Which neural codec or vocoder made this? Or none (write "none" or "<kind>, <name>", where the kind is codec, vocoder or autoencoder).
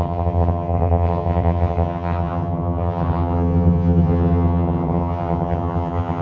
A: vocoder, HiFi-GAN